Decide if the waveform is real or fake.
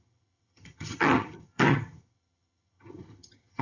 fake